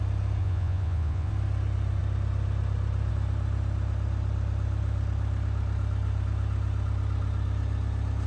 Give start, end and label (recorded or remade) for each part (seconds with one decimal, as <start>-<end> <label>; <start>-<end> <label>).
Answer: 0.0-0.4 recorded; 0.4-1.3 remade; 1.3-8.3 recorded